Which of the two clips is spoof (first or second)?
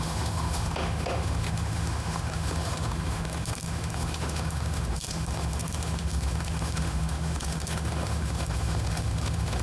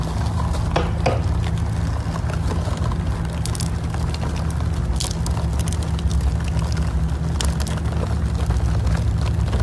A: first